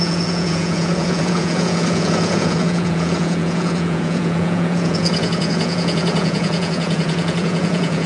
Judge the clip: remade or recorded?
remade